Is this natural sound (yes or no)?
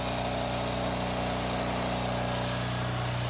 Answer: yes